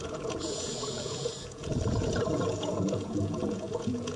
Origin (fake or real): fake